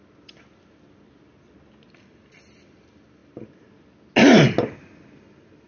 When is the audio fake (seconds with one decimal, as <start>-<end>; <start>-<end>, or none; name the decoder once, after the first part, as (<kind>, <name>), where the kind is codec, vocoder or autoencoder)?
none